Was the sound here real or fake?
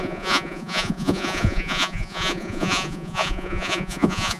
fake